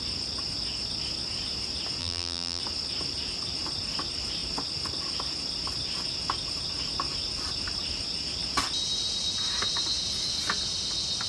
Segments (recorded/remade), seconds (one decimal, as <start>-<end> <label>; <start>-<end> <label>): 0.0-2.0 recorded; 2.0-2.6 remade; 2.6-11.3 recorded